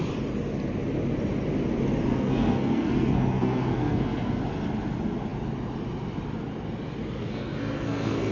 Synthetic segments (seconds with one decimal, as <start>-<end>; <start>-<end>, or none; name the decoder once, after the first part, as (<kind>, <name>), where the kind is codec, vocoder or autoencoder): 2.1-4.4 (codec, SNAC); 7.2-8.3